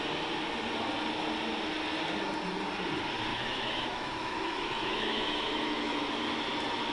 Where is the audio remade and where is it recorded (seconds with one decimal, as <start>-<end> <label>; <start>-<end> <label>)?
0.0-3.3 recorded; 3.3-6.1 remade; 6.1-6.9 recorded